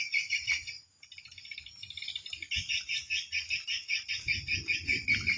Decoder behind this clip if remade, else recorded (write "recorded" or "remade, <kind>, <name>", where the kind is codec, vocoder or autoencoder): recorded